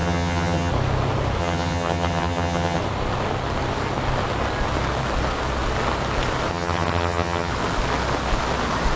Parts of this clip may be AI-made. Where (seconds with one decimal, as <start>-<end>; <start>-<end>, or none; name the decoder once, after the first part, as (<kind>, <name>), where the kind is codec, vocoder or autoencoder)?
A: 0.0-0.7 (vocoder, HiFi-GAN); 1.4-2.8; 6.5-7.5

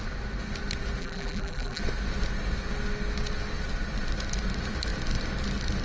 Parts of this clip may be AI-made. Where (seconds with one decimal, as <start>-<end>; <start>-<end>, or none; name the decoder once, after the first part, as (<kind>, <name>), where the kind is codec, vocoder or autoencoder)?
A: 1.0-1.8 (vocoder, BigVGAN v2)

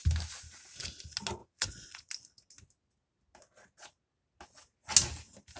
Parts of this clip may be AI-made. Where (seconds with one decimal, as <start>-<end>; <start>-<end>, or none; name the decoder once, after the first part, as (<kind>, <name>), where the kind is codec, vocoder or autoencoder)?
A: 1.4-2.1 (vocoder, Vocos)

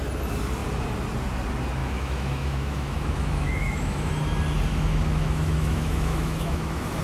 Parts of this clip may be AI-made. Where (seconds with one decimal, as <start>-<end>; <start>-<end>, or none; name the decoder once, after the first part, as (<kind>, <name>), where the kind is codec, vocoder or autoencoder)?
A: 1.8-4.1 (autoencoder, DAC-VAE); 4.7-7.0

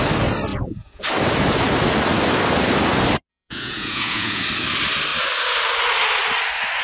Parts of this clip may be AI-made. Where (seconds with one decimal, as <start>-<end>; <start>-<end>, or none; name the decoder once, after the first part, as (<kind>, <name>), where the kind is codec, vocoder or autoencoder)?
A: 0.5-1.0 (vocoder, Vocos); 3.3-4.4

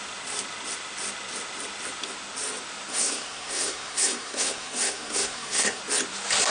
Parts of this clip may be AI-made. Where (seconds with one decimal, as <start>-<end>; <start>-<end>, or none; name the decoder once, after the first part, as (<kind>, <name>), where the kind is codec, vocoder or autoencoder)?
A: 2.9-5.8 (codec, SNAC)

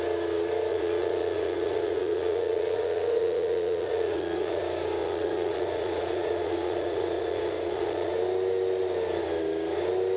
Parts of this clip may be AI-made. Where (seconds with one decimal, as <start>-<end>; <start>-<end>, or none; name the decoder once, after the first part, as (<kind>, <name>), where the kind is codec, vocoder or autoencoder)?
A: 0.7-4.6 (vocoder, Vocos); 5.0-8.1

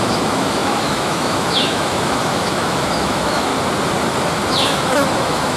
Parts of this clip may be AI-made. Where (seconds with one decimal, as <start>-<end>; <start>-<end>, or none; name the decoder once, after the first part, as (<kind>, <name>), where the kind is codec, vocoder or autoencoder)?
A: 0.0-3.5 (autoencoder, DAC-VAE); 4.5-5.6